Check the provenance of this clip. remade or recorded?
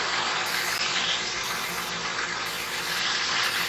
recorded